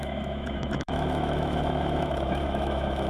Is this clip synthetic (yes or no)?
yes